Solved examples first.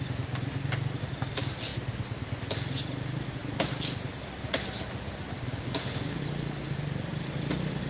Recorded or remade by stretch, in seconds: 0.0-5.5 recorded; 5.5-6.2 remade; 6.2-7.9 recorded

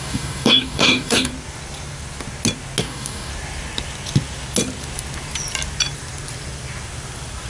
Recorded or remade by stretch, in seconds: 0.0-1.3 remade; 1.3-2.8 recorded; 2.8-3.3 remade; 3.3-7.5 recorded

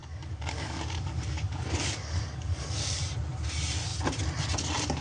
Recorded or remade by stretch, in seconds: 0.0-3.0 remade; 3.0-5.0 recorded